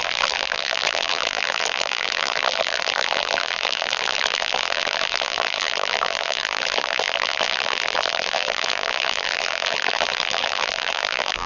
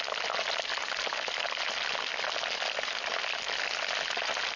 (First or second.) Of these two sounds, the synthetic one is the first